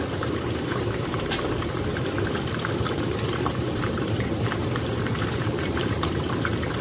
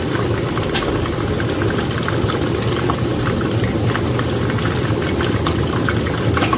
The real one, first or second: second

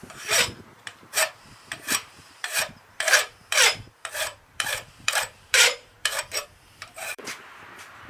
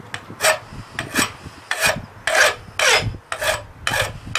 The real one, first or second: second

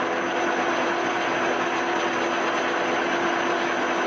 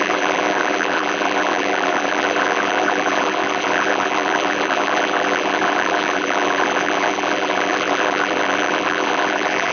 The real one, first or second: first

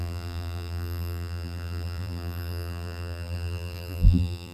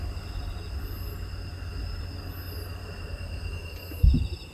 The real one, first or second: second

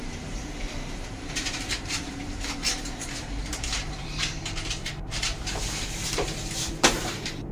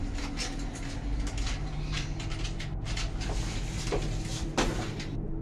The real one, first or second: second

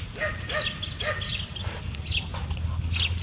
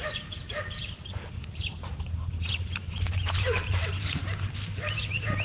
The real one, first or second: first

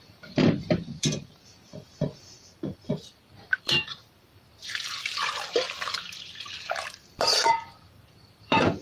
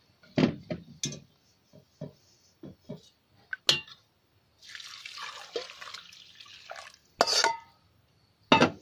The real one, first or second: second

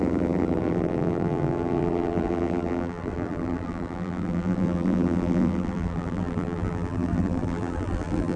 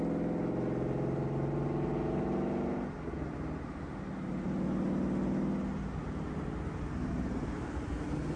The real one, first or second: second